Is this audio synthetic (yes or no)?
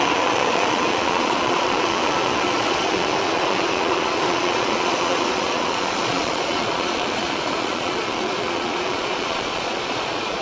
yes